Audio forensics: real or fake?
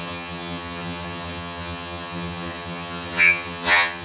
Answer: fake